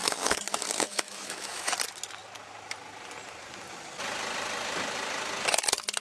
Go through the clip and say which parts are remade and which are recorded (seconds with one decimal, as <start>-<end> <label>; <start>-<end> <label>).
0.0-1.7 remade; 1.7-6.0 recorded